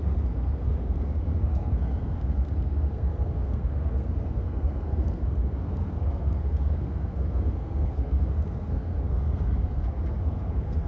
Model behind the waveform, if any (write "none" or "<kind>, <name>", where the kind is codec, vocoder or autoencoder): codec, SNAC